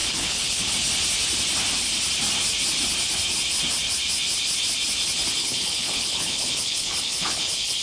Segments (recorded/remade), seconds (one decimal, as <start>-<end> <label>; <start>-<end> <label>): 0.0-0.7 remade; 0.7-5.4 recorded; 5.4-7.8 remade